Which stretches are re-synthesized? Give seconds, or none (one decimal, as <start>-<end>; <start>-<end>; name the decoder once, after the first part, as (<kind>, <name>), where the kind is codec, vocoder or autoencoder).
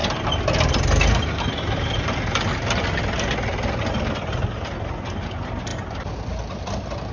none